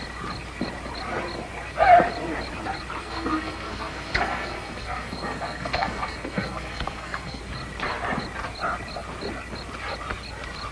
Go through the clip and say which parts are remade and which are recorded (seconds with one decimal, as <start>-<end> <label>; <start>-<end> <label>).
0.0-3.0 recorded; 3.0-7.4 remade; 7.4-10.7 recorded